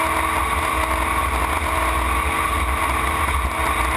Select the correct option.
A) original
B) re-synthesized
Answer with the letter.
A